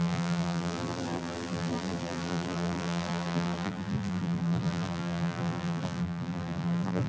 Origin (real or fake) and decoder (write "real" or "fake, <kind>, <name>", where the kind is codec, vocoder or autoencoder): fake, vocoder, BigVGAN v2